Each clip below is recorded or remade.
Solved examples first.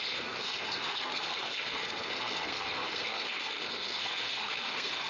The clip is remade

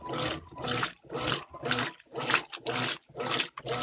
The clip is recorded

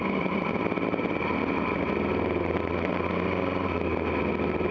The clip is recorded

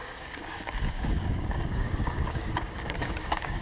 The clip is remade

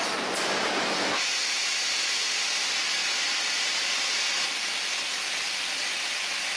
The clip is recorded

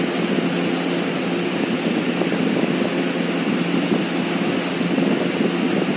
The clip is recorded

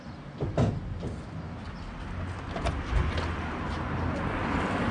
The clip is recorded